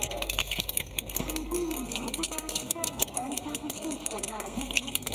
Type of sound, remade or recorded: remade